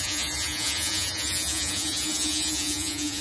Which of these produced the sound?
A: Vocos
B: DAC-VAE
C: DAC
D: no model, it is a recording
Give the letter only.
A